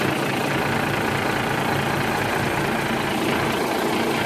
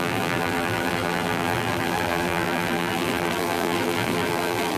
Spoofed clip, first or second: second